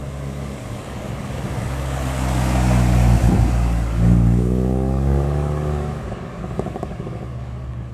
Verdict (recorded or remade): remade